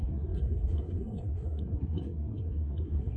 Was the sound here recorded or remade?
remade